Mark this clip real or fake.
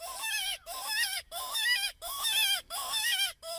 fake